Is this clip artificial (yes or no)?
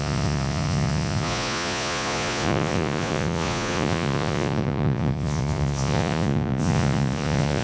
yes